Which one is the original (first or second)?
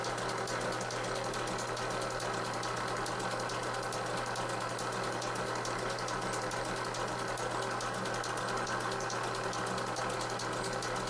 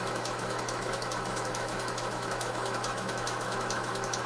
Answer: first